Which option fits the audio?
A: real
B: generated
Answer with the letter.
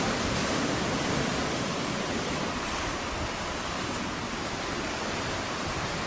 B